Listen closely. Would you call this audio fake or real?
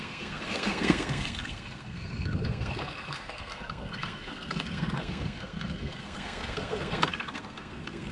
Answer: fake